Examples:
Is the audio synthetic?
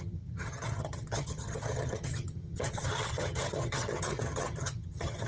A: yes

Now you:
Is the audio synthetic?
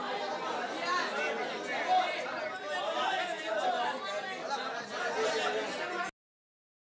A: no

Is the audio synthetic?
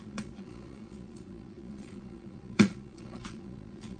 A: yes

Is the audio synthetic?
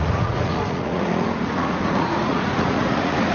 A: yes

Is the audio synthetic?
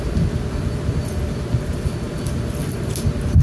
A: no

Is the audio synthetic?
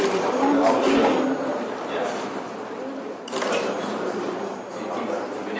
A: no